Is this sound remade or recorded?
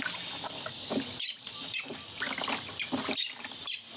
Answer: recorded